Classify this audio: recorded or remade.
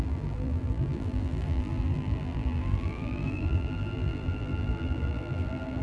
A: remade